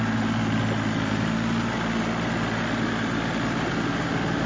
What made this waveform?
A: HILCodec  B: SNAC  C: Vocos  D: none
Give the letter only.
D